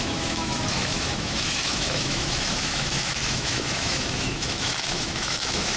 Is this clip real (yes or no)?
no